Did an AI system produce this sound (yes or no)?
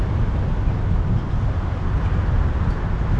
no